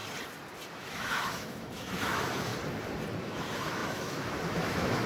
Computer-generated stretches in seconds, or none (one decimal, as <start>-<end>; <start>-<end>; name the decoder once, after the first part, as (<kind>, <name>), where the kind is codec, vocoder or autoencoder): 0.7-2.5 (autoencoder, DAC-VAE); 3.2-5.1